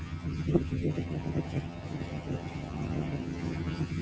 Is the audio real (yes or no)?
no